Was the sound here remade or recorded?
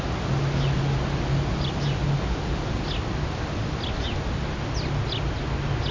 recorded